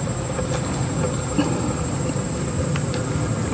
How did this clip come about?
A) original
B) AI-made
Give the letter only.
A